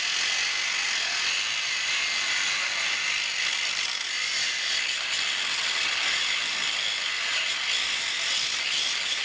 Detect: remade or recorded recorded